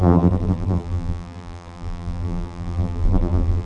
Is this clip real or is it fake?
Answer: fake